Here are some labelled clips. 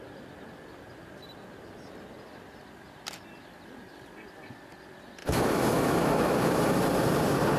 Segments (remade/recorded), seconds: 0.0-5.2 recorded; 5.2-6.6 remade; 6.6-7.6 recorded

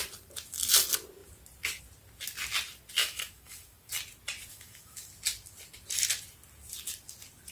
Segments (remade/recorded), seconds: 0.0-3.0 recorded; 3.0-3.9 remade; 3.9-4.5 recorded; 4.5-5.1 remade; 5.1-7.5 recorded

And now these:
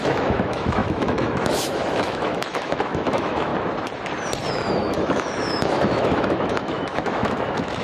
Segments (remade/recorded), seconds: 0.0-3.5 remade; 3.5-4.5 recorded; 4.5-7.8 remade

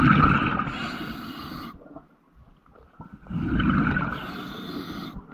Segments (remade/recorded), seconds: 0.0-5.3 recorded

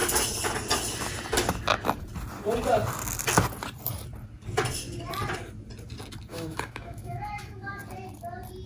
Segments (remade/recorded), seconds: 0.0-6.3 recorded; 6.3-7.8 remade; 7.8-8.7 recorded

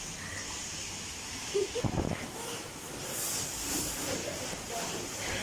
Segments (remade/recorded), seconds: 0.0-0.8 recorded; 0.8-3.0 remade; 3.0-5.4 recorded

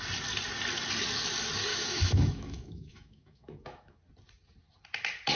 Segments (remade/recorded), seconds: 0.0-1.7 recorded; 1.7-4.0 remade; 4.0-5.4 recorded

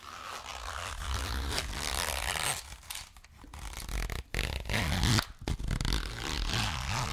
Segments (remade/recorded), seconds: 0.0-7.1 recorded